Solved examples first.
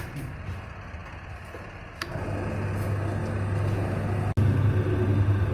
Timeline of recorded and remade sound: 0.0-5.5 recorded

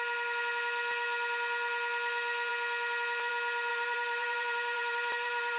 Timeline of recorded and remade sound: 0.0-3.7 recorded; 3.7-5.6 remade

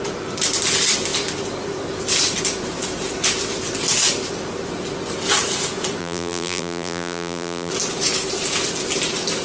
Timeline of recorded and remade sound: 0.0-6.0 recorded; 6.0-7.7 remade; 7.7-9.4 recorded

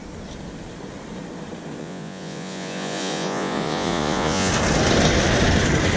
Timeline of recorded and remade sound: 0.0-1.8 recorded; 1.8-4.5 remade; 4.5-6.0 recorded

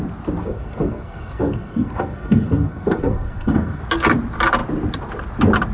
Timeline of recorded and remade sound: 0.0-0.4 recorded; 0.4-3.8 remade; 3.8-5.7 recorded

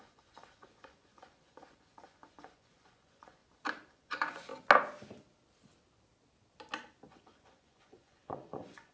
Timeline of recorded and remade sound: 0.0-3.4 remade; 3.4-3.9 recorded; 3.9-4.5 remade; 4.5-7.1 recorded; 7.1-8.9 remade

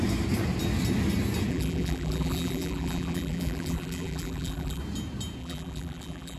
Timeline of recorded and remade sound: 0.0-1.5 recorded; 1.5-4.8 remade; 4.8-5.4 recorded; 5.4-6.4 remade